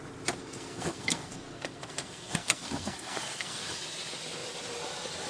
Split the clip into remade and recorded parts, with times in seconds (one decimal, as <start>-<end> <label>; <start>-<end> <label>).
0.0-0.4 recorded; 0.4-3.6 remade; 3.6-5.3 recorded